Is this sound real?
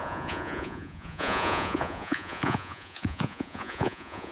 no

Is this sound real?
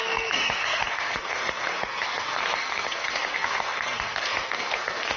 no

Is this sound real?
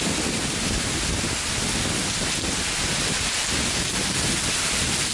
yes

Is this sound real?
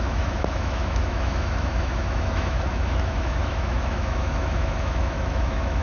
no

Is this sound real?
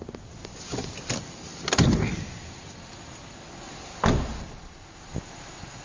yes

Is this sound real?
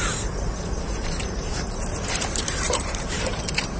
no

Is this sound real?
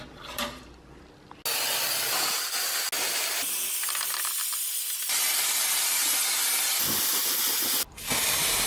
yes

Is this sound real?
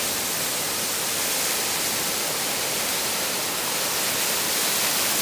yes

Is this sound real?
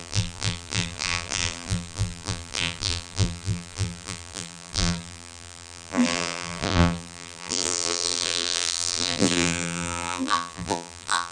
no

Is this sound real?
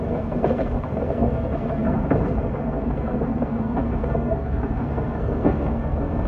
no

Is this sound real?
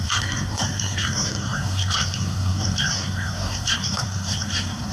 no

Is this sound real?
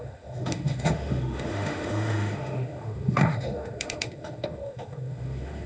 no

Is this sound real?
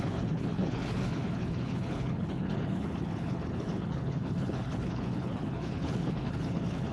no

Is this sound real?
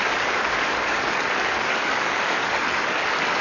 no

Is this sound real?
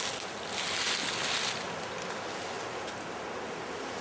yes